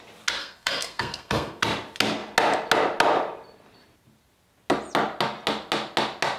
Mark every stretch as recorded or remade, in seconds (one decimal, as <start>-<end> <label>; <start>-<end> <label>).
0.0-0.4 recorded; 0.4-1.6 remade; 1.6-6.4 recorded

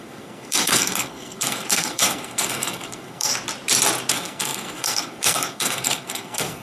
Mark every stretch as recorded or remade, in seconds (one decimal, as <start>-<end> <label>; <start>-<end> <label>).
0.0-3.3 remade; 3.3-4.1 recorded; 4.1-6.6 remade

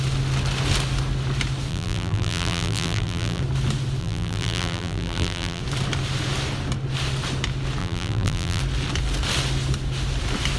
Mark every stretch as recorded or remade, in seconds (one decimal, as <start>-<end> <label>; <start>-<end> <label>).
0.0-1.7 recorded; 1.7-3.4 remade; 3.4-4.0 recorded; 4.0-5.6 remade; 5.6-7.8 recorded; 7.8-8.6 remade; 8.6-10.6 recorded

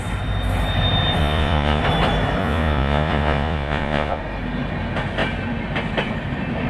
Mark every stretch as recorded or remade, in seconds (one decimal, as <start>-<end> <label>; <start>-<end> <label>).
0.0-1.2 recorded; 1.2-1.8 remade; 1.8-2.4 recorded; 2.4-4.2 remade; 4.2-6.7 recorded